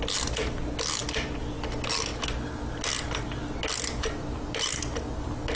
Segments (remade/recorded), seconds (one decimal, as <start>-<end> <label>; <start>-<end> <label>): 0.0-5.6 recorded